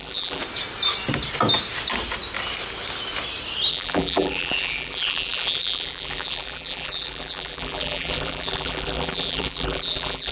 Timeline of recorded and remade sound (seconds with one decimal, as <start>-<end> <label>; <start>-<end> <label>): 0.0-0.4 remade; 0.4-3.7 recorded; 3.7-10.3 remade